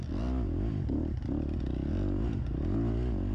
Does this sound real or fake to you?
real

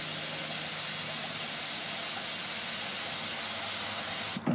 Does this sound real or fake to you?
real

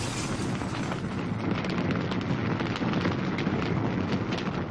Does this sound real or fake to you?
real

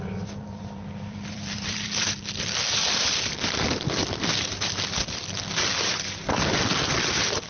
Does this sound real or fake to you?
fake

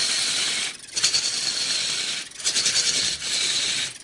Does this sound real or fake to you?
real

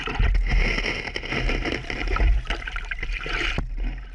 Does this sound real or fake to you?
fake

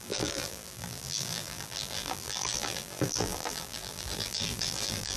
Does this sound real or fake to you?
fake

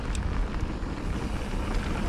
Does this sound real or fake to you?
real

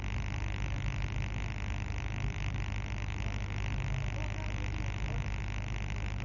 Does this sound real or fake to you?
real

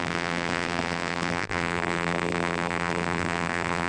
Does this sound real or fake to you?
fake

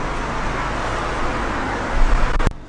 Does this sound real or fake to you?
real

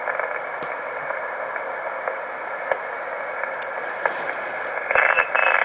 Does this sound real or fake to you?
fake